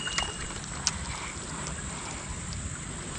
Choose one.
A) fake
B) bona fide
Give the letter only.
B